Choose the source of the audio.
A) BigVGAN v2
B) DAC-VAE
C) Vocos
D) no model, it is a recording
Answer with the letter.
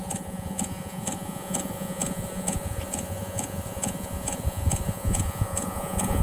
C